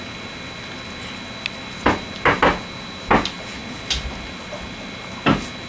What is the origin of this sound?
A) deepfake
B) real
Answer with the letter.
B